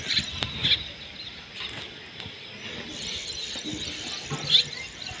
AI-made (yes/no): no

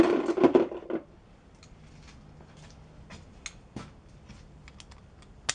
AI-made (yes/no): no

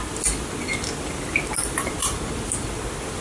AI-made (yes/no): no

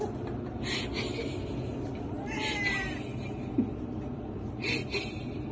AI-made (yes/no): no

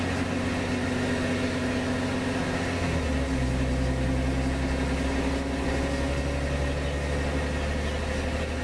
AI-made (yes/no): no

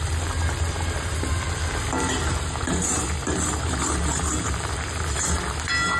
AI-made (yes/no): no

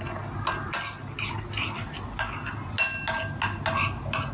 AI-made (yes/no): no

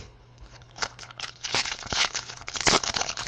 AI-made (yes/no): yes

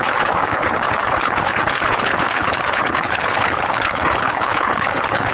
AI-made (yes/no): yes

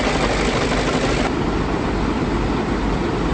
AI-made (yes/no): no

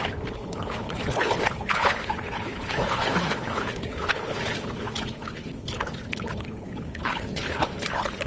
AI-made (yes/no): yes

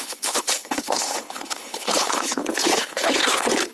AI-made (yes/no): yes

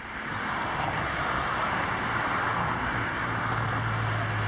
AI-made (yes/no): no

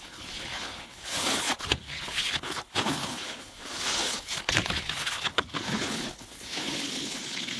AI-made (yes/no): yes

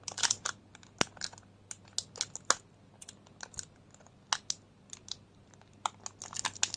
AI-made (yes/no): no